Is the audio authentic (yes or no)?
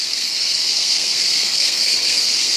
no